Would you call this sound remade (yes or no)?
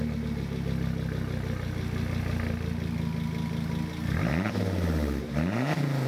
no